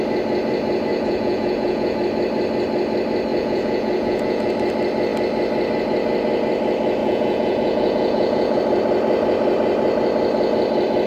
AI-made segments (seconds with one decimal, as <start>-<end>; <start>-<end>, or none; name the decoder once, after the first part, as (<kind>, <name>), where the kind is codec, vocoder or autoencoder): 0.9-2.0 (vocoder, Vocos); 3.3-4.5; 7.0-8.6